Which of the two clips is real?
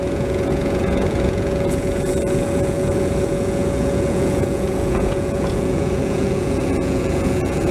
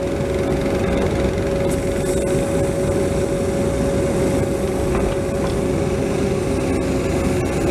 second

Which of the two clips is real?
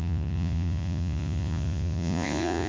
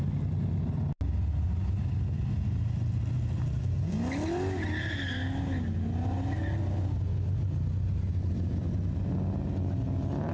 second